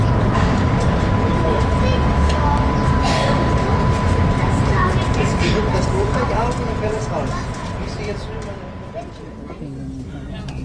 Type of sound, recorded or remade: recorded